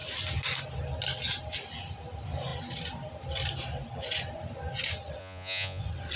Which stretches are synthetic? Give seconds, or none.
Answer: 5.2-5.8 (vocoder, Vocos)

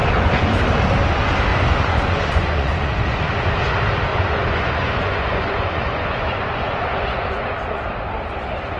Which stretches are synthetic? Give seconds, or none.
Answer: 0.0-0.6 (vocoder, Vocos); 1.5-3.5; 4.1-7.8